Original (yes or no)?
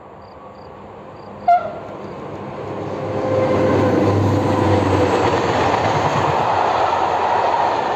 yes